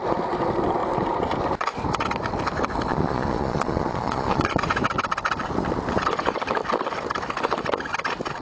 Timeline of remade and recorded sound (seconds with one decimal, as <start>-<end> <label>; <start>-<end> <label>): 0.0-2.9 recorded; 2.9-4.6 remade; 4.6-8.4 recorded